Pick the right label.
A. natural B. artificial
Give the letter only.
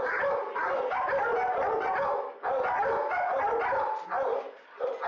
A